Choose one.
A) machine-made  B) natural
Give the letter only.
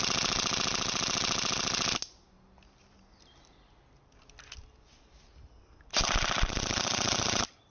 B